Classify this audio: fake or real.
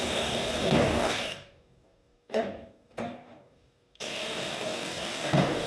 fake